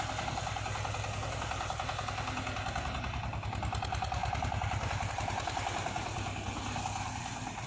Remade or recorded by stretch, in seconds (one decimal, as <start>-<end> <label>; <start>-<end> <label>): 0.0-7.7 recorded